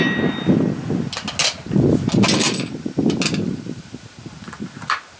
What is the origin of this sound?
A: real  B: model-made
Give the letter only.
A